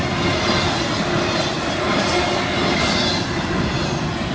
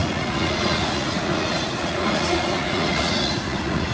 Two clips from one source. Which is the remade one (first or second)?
second